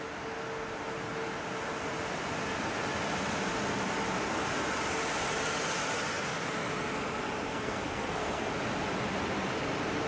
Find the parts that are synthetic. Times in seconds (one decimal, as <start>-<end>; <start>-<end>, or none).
7.5-8.5